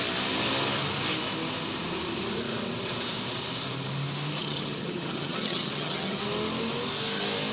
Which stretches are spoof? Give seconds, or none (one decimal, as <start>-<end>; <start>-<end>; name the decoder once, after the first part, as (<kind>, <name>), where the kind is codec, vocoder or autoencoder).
4.4-6.2 (vocoder, HiFi-GAN)